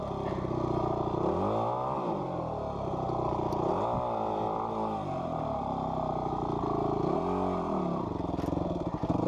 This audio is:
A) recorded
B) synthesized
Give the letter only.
A